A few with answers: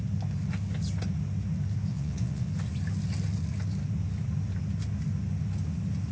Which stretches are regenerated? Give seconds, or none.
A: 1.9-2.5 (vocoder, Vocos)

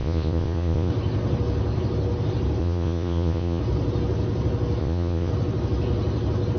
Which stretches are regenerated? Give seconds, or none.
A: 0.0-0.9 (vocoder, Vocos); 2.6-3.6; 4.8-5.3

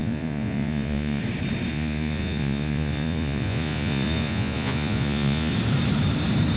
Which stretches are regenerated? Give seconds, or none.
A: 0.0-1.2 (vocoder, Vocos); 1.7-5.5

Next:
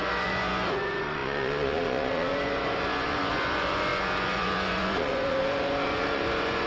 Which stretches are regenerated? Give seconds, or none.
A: 0.0-6.7 (vocoder, Vocos)